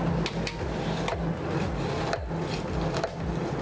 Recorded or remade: recorded